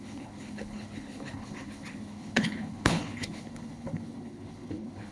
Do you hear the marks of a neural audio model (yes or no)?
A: yes